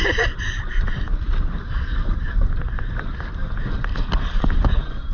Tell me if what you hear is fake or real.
real